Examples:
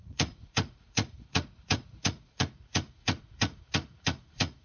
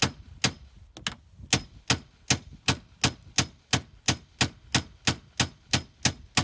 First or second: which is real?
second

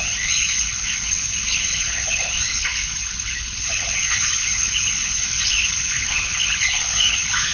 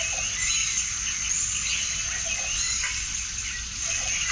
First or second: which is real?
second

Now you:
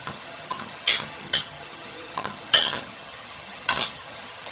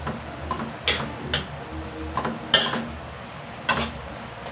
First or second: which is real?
second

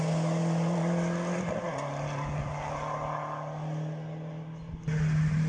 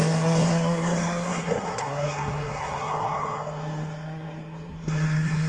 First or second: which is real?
first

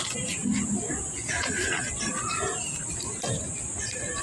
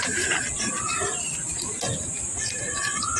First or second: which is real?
first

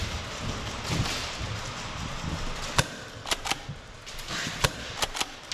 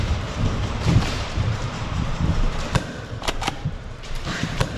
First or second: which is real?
first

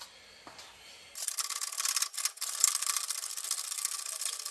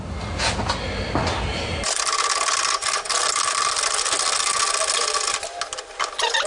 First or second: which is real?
second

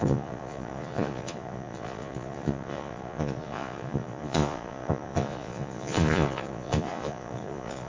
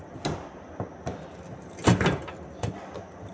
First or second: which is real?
second